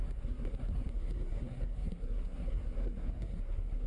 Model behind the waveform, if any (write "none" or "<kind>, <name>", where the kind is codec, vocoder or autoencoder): codec, SNAC